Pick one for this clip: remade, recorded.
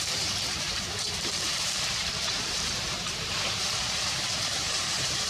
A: remade